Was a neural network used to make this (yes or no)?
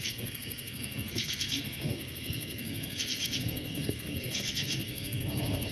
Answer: yes